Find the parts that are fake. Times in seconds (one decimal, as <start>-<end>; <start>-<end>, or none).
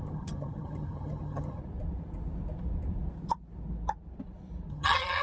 0.0-1.6; 4.7-5.2